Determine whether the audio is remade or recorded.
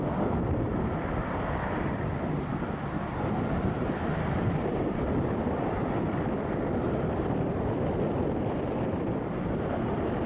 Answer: remade